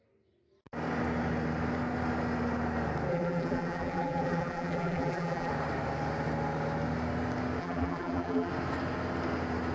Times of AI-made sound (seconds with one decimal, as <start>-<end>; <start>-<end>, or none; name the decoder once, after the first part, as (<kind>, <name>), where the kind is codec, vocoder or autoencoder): 3.1-5.5 (vocoder, BigVGAN v2); 7.6-8.5